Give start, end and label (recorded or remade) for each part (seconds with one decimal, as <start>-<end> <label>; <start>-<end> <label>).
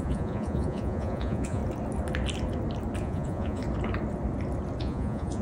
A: 0.0-1.6 remade; 1.6-3.0 recorded; 3.0-3.6 remade; 3.6-4.8 recorded; 4.8-5.4 remade